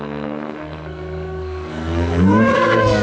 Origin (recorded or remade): remade